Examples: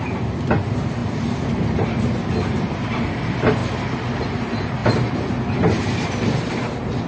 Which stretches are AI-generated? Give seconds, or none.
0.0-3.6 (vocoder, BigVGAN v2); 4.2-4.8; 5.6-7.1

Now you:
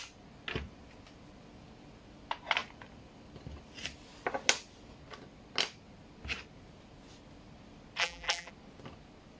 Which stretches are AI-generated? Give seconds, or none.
8.0-8.5 (vocoder, BigVGAN v2)

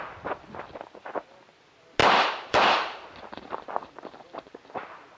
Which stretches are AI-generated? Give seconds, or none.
2.0-4.8 (vocoder, BigVGAN v2)